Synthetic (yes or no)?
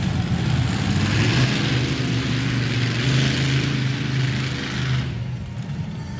no